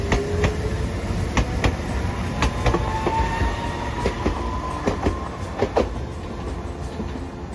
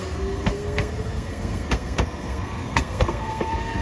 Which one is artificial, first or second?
second